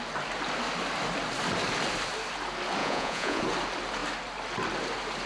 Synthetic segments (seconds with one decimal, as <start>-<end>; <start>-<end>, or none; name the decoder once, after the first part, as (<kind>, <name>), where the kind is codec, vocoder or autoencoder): 2.8-3.4 (vocoder, Vocos)